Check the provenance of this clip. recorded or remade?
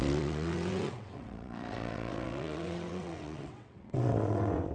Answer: remade